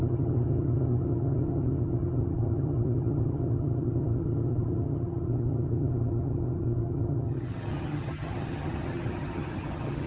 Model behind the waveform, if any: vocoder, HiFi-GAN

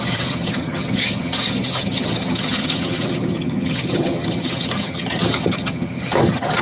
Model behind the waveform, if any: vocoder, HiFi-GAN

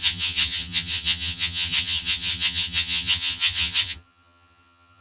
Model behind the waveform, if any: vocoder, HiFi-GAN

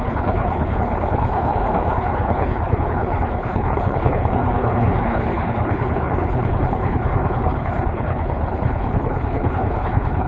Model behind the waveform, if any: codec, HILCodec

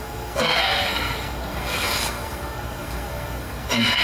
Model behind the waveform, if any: codec, SNAC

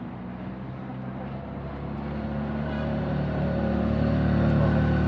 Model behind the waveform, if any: none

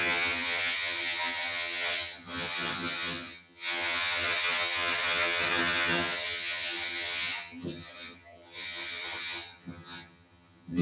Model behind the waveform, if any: vocoder, HiFi-GAN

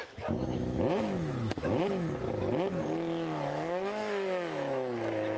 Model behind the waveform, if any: autoencoder, DAC-VAE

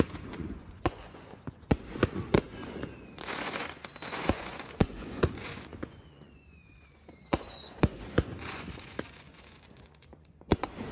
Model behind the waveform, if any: vocoder, Vocos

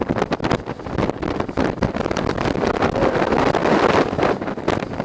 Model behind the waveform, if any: none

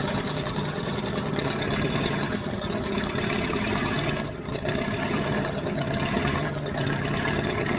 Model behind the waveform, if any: vocoder, HiFi-GAN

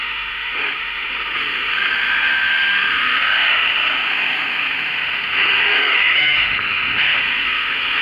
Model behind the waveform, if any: autoencoder, DAC-VAE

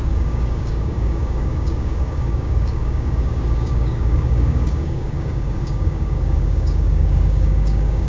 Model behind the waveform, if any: codec, DAC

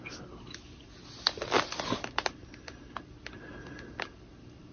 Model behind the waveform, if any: none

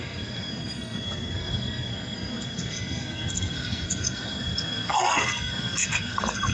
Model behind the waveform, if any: codec, SNAC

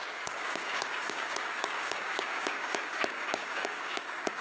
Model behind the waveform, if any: codec, DAC